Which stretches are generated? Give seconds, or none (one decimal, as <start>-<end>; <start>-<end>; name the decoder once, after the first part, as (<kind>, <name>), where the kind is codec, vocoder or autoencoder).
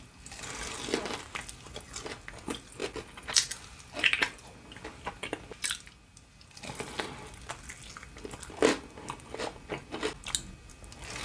none